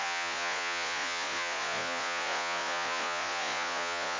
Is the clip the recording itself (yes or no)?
no